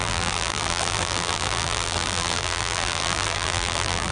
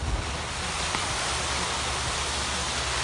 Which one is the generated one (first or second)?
first